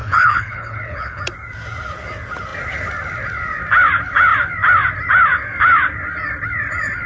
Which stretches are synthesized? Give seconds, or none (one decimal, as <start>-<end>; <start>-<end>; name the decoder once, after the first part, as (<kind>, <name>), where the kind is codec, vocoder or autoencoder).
0.0-1.2 (codec, HILCodec)